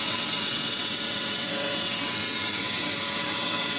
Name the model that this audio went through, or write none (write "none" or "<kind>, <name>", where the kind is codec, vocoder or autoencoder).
vocoder, WaveNeXt